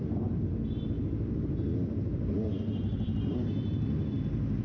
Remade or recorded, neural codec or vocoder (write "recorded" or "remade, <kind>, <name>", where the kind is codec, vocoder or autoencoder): remade, vocoder, BigVGAN v2